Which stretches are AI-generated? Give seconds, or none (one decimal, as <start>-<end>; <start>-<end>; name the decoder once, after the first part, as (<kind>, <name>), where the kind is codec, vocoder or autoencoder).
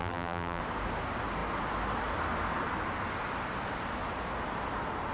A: 0.0-0.6 (vocoder, BigVGAN v2)